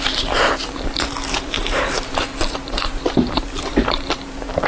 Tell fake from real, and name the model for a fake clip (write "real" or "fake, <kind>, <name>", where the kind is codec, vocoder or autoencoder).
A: fake, vocoder, BigVGAN v2